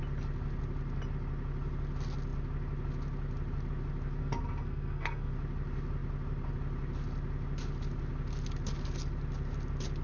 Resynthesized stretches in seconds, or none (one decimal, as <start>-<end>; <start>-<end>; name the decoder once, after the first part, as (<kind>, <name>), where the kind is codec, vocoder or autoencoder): 4.2-5.3 (codec, SNAC)